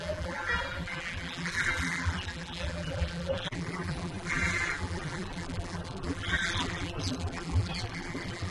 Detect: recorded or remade remade